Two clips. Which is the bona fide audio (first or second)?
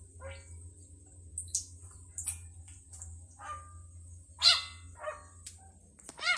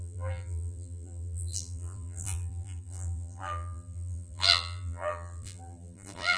first